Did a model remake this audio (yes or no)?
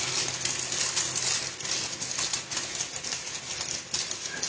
no